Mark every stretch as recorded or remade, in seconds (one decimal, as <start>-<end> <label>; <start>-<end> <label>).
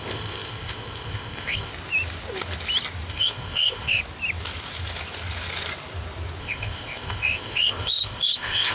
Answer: 0.0-1.7 remade; 1.7-3.1 recorded; 3.1-4.0 remade; 4.0-6.4 recorded; 6.4-8.7 remade